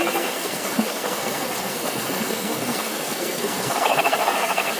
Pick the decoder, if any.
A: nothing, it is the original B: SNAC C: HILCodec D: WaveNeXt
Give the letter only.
B